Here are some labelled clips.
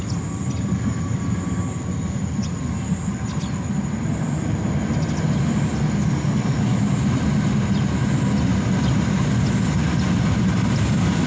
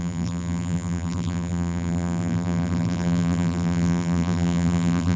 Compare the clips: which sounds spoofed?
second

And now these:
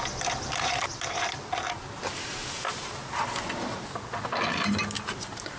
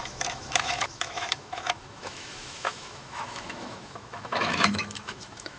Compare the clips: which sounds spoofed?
second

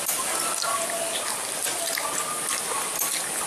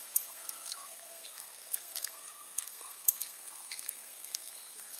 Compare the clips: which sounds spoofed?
second